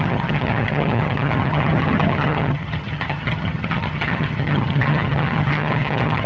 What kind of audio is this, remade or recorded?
remade